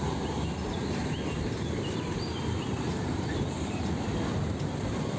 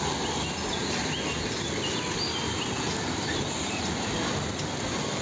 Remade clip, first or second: first